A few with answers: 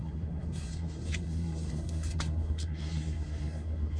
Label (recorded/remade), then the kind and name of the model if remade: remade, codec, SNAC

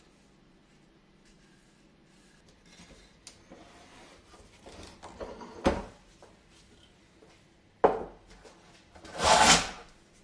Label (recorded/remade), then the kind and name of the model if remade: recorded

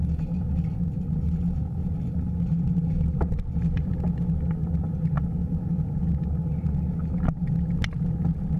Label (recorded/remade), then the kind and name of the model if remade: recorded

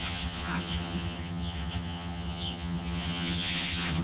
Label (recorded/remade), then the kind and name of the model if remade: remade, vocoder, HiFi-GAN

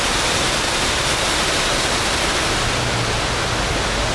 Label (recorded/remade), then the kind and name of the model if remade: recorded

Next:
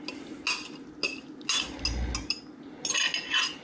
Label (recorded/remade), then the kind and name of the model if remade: recorded